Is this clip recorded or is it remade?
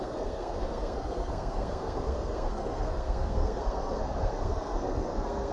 remade